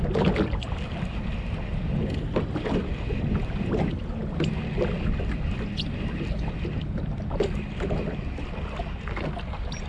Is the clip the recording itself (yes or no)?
yes